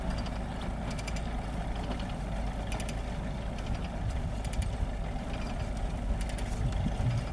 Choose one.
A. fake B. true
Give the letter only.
B